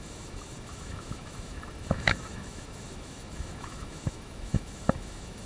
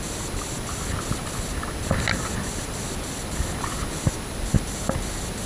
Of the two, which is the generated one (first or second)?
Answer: first